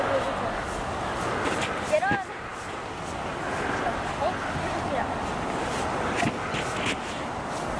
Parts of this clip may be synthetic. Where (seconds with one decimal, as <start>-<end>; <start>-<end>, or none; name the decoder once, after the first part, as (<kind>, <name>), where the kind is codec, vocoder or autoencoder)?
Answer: none